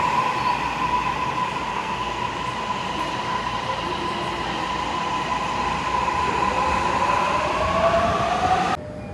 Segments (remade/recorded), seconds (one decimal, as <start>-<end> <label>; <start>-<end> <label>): 0.0-1.7 recorded; 1.7-2.2 remade; 2.2-9.1 recorded